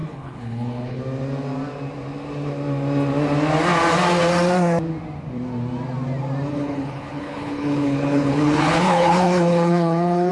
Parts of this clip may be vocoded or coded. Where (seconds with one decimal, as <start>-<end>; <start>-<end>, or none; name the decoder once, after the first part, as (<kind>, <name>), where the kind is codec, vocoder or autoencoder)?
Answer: 0.0-1.0 (codec, HILCodec); 6.5-10.3